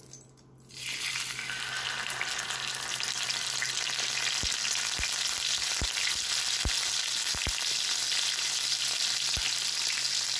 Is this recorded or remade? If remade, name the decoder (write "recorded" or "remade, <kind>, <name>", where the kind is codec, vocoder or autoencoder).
recorded